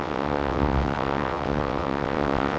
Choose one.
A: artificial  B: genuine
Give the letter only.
A